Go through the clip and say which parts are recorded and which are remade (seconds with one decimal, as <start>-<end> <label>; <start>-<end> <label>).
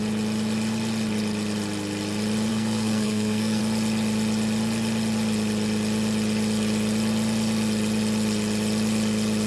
0.0-2.5 recorded; 2.5-3.6 remade; 3.6-9.5 recorded